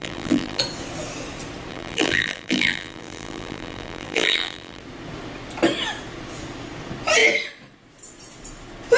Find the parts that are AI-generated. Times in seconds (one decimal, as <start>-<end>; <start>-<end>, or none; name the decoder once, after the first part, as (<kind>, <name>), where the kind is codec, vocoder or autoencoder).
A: 0.0-0.6 (vocoder, BigVGAN v2); 1.7-4.8